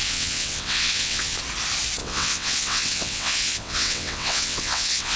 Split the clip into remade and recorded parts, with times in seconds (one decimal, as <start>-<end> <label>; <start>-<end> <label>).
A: 0.0-1.4 remade; 1.4-2.0 recorded; 2.0-5.2 remade

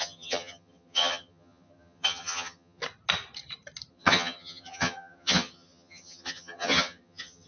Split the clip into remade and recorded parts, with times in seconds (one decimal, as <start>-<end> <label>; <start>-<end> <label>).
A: 0.0-2.8 remade; 2.8-3.9 recorded; 3.9-7.5 remade

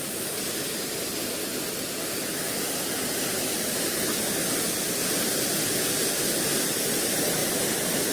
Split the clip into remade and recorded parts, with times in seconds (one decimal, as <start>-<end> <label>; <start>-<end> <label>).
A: 0.0-8.1 recorded

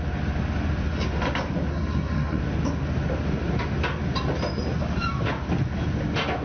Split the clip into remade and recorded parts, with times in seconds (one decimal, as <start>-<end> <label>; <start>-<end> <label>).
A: 0.0-1.7 recorded; 1.7-2.4 remade; 2.4-6.4 recorded

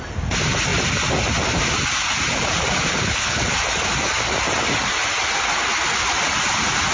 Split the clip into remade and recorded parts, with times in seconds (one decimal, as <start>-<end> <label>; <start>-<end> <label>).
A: 0.0-2.9 recorded; 2.9-3.5 remade; 3.5-6.9 recorded

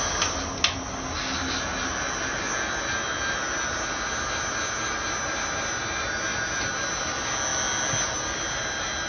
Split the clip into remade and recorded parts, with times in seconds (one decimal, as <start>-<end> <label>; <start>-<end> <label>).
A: 0.0-9.1 recorded

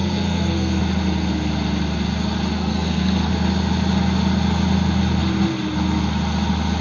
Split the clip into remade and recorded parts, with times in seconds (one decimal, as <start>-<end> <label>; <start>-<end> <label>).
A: 0.0-0.8 remade; 0.8-2.5 recorded; 2.5-3.3 remade; 3.3-6.8 recorded